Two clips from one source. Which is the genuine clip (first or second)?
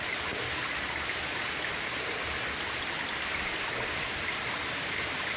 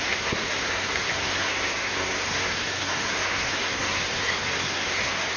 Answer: first